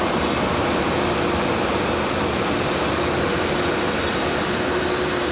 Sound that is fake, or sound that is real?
real